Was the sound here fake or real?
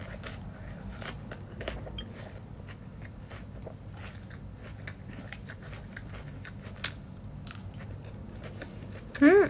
real